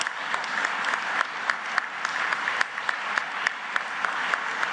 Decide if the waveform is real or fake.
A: real